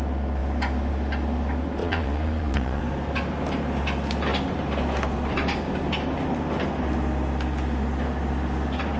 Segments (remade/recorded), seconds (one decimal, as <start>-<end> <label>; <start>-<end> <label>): 0.0-1.8 recorded; 1.8-2.8 remade; 2.8-9.0 recorded